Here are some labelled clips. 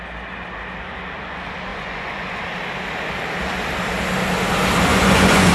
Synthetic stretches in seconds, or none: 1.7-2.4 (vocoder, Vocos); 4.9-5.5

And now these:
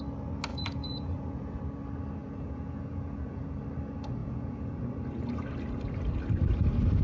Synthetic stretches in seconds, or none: 0.5-1.6 (vocoder, Vocos); 2.2-3.6; 4.2-4.8

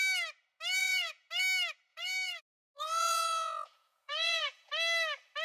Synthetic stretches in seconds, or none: 0.8-1.3 (vocoder, Vocos); 1.9-2.4; 3.0-4.7